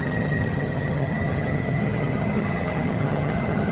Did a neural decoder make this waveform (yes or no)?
yes